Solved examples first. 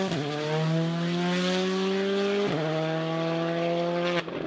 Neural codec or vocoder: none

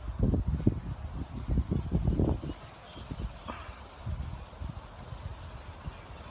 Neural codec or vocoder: none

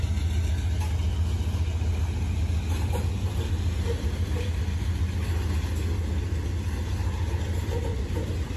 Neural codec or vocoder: none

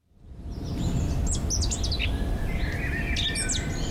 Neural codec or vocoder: none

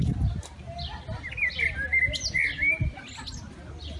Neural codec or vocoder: none